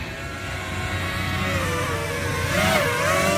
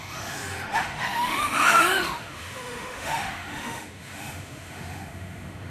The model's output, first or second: second